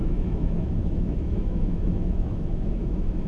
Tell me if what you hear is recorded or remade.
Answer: remade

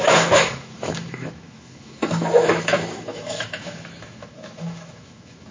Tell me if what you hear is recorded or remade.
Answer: remade